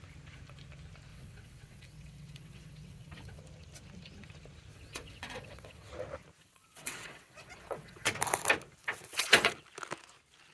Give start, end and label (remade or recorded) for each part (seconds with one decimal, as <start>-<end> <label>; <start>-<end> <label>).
0.0-1.1 recorded; 1.1-3.4 remade; 3.4-4.7 recorded; 4.7-5.9 remade; 5.9-6.4 recorded; 6.4-8.1 remade; 8.1-8.8 recorded; 8.8-9.5 remade; 9.5-10.5 recorded